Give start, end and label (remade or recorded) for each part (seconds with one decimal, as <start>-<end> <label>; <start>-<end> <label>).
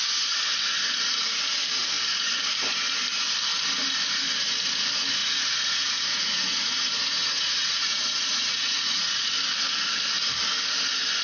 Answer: 0.0-5.2 recorded; 5.2-9.2 remade; 9.2-11.2 recorded